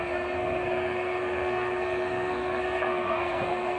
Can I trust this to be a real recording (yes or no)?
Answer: no